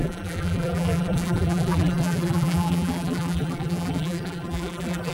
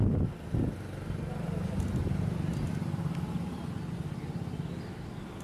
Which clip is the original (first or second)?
second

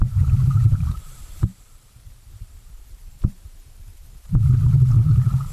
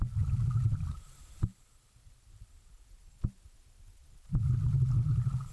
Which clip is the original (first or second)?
second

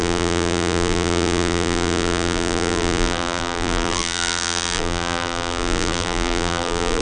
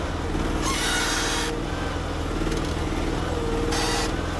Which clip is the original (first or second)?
second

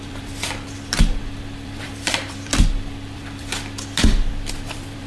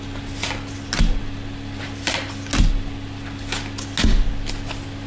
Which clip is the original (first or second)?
second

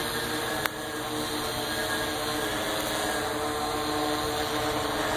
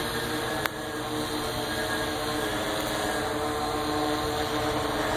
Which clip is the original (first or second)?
first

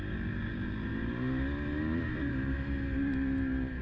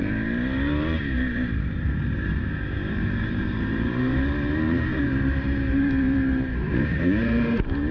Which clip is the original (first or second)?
first